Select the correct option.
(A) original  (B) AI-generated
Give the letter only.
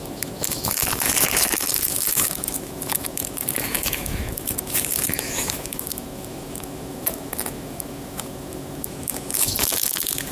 B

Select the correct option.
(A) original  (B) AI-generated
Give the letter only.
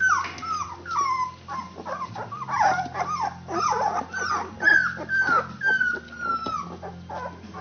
A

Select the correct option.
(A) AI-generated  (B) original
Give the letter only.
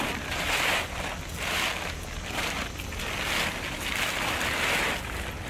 B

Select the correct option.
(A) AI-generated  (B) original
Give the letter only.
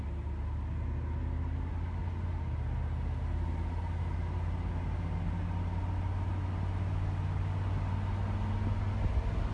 B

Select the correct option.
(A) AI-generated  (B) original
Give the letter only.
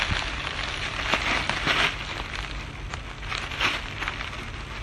A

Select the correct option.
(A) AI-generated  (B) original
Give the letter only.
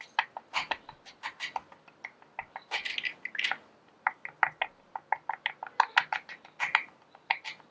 B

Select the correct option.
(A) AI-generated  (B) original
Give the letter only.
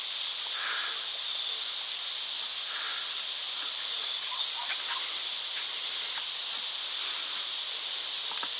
B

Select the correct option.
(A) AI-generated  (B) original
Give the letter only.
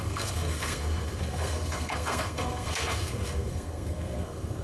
A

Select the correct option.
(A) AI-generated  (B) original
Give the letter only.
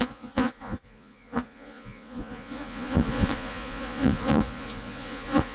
A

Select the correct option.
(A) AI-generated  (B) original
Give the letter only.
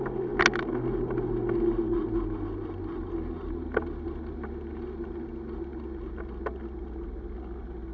B